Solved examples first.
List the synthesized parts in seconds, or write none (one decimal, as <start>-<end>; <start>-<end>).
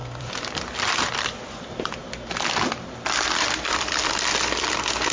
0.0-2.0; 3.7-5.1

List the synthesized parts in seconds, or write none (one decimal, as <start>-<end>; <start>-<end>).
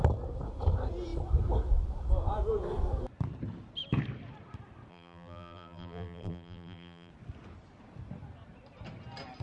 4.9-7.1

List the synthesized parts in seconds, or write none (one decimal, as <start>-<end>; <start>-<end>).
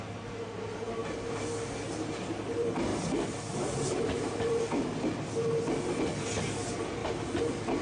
none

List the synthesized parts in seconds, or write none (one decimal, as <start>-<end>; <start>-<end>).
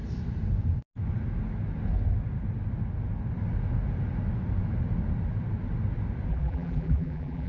6.3-7.5